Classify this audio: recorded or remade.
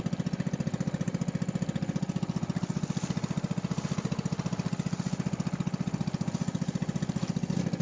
recorded